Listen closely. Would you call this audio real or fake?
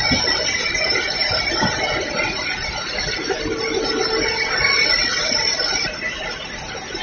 real